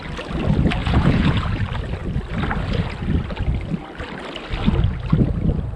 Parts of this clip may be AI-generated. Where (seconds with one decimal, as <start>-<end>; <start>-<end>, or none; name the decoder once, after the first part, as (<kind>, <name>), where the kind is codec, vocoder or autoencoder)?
0.8-1.6 (vocoder, Vocos)